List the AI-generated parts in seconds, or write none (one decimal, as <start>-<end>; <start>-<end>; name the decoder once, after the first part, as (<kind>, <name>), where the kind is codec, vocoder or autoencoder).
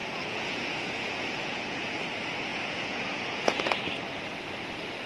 0.0-1.9 (vocoder, Vocos); 2.5-3.6